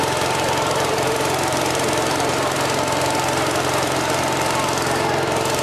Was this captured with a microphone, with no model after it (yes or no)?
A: no